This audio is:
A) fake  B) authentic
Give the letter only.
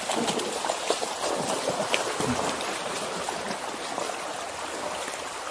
B